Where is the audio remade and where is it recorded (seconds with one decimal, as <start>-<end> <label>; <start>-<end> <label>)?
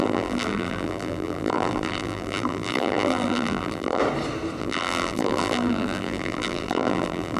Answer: 0.0-4.0 remade; 4.0-4.6 recorded; 4.6-7.4 remade